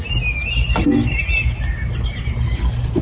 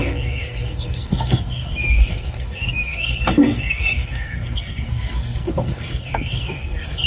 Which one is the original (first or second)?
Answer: first